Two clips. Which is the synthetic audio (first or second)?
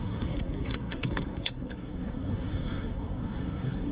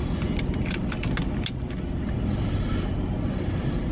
first